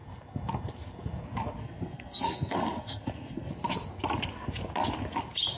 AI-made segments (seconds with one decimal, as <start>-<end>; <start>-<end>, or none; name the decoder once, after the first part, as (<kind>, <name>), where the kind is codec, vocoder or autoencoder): 1.6-3.5 (codec, SNAC)